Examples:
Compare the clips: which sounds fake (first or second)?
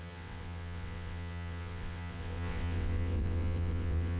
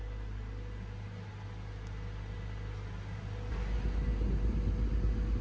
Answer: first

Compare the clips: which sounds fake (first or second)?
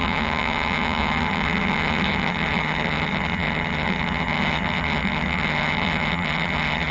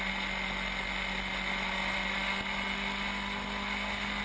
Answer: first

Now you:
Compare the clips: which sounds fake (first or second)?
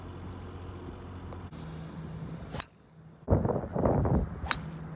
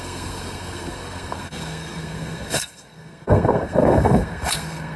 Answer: second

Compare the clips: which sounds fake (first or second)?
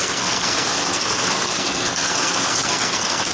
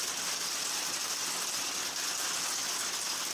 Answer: first